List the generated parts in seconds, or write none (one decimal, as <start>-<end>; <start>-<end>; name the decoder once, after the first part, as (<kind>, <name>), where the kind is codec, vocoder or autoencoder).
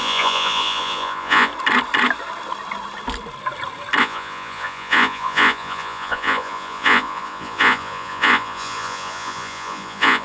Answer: 0.0-1.5 (vocoder, Vocos); 4.0-10.2